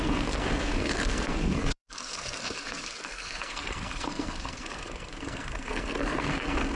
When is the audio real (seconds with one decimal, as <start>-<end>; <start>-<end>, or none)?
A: none